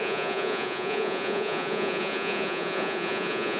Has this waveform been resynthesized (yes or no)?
yes